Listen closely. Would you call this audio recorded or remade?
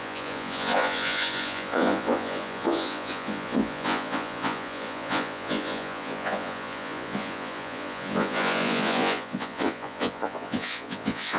remade